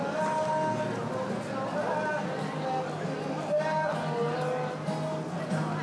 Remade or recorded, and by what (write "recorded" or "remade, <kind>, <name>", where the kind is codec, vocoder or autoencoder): recorded